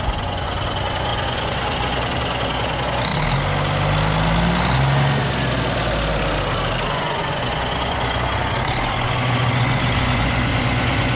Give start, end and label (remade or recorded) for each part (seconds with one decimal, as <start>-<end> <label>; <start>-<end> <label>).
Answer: 0.0-3.1 remade; 3.1-6.9 recorded; 6.9-11.2 remade